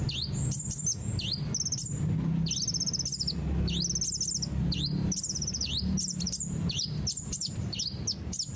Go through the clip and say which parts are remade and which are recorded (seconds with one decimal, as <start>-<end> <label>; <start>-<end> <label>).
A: 0.0-4.6 recorded; 4.6-7.8 remade; 7.8-8.6 recorded